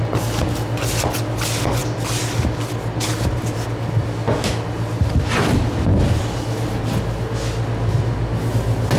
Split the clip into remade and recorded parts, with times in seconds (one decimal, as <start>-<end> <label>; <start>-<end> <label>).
0.0-9.0 recorded